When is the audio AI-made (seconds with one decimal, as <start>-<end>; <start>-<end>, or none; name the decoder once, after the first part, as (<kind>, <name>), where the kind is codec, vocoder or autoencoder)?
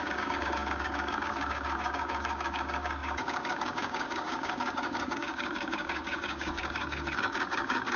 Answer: 0.0-8.0 (codec, DAC)